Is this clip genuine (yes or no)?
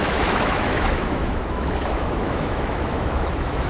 no